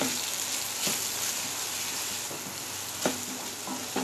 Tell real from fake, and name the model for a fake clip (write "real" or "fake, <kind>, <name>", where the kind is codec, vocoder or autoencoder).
real